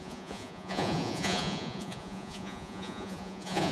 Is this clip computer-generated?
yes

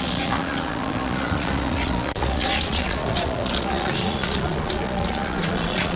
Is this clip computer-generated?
yes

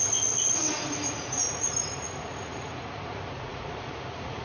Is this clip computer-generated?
yes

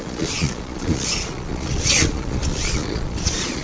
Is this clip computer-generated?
yes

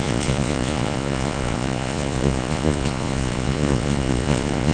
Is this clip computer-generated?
yes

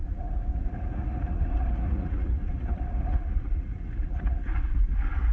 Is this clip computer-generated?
yes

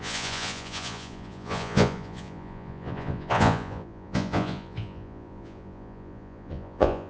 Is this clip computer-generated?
yes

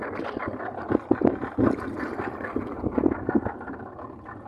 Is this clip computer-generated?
no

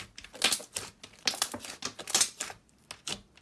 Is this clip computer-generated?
no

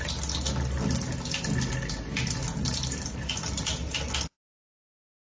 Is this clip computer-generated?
no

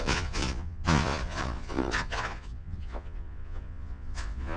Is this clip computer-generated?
yes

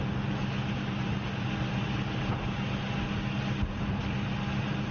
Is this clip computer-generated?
no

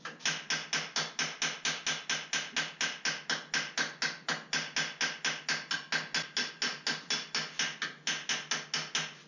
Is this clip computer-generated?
no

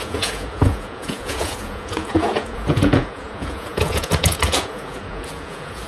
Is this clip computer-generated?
yes